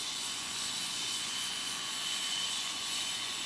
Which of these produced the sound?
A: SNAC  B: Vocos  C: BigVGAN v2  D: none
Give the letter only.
B